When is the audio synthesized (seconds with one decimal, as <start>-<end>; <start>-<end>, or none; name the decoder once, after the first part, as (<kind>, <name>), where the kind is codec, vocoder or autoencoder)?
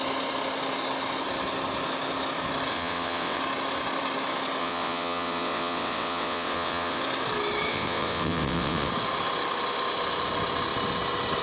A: 2.7-3.4 (vocoder, WaveNeXt); 4.6-7.0; 7.7-8.9